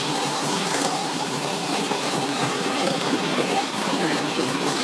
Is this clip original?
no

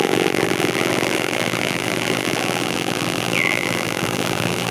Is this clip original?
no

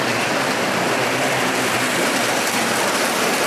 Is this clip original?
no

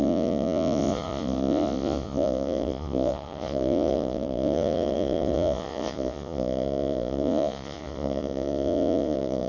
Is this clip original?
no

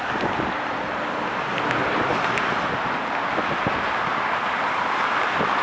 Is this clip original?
yes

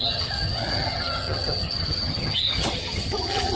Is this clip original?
no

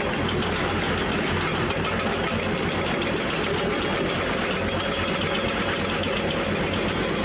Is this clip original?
yes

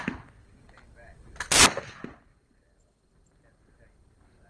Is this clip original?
yes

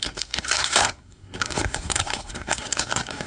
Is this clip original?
no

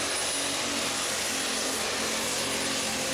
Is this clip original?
yes